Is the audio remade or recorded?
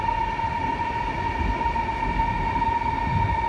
recorded